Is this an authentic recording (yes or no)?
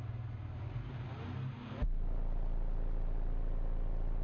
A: yes